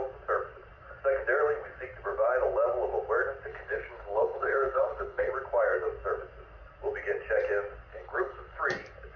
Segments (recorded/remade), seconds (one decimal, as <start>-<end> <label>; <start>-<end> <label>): 0.0-3.5 recorded; 3.5-5.3 remade; 5.3-7.9 recorded; 7.9-8.6 remade; 8.6-9.2 recorded